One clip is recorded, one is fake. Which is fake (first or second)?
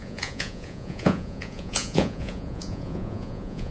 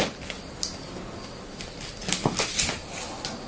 first